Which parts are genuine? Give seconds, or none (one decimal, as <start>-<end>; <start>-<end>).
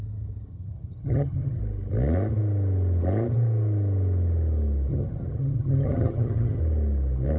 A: 0.0-0.5; 1.6-4.9; 6.6-7.4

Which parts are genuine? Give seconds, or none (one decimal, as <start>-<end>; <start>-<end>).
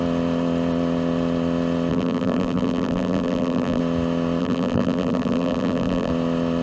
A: 0.0-1.9; 3.8-4.4; 6.1-6.6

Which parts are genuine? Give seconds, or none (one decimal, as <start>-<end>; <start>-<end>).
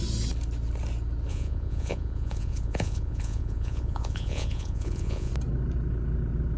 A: 0.0-1.3; 5.3-6.6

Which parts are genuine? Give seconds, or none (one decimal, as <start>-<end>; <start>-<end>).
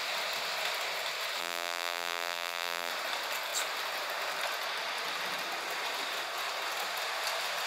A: 0.0-1.4; 2.9-7.7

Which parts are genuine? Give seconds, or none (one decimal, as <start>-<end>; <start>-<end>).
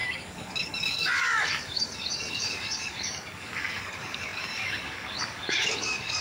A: none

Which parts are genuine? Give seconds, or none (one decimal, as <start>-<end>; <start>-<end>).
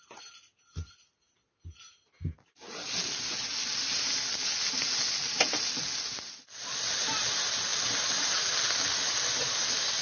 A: 0.0-10.0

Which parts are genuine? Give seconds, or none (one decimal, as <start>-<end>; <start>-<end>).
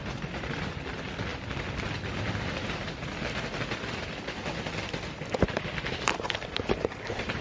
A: 0.0-7.4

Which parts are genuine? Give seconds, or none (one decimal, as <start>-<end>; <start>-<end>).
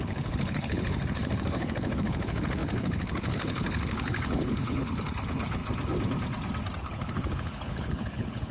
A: 5.6-6.8